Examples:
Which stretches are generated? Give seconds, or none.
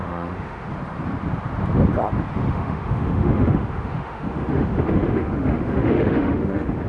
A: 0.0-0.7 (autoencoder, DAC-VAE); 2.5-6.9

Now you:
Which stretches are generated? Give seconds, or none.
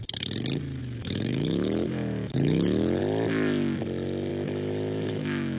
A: 0.8-3.0 (autoencoder, DAC-VAE); 4.3-5.6